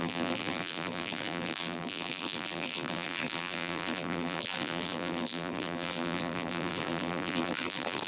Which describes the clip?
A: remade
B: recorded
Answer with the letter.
A